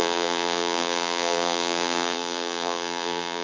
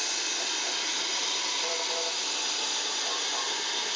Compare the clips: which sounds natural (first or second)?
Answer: second